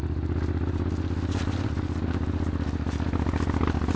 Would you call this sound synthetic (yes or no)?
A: no